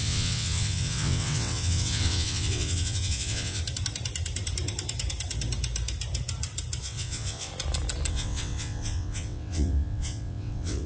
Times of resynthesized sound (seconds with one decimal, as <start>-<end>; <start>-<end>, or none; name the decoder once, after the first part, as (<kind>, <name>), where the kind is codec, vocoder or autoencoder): 0.0-3.6 (vocoder, WaveNeXt); 6.8-7.5; 8.1-10.9